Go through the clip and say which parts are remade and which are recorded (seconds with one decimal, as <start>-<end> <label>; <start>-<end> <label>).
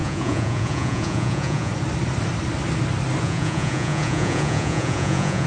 0.0-1.7 remade; 1.7-3.2 recorded; 3.2-5.5 remade